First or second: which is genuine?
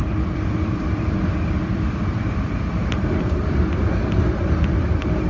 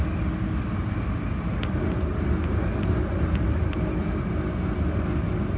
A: second